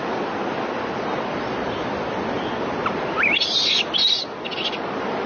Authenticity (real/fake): real